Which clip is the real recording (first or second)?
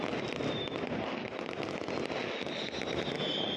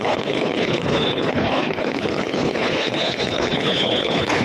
first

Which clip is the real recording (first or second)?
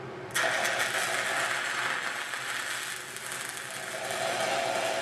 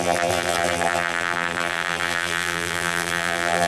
first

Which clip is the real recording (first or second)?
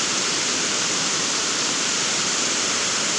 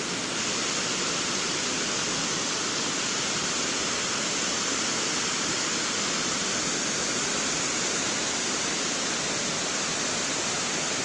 second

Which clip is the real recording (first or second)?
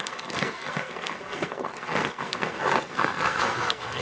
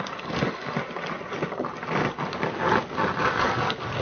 second